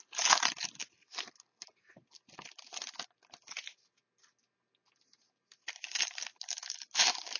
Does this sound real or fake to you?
real